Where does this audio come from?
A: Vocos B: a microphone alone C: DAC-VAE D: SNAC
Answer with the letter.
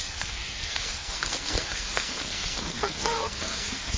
D